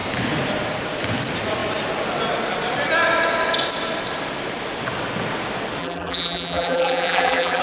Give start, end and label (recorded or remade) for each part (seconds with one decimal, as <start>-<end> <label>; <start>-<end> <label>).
0.0-5.8 recorded; 5.8-7.6 remade